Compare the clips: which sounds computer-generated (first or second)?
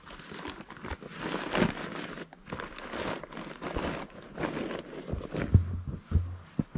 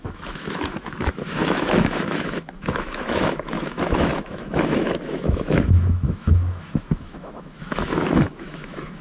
second